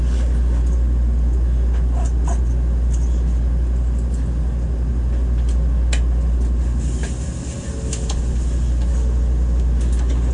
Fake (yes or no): no